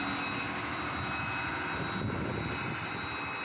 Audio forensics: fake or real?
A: real